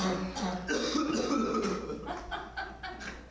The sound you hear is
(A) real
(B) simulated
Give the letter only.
A